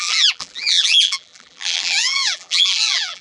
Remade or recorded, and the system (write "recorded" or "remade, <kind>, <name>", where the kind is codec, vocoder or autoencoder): remade, vocoder, BigVGAN v2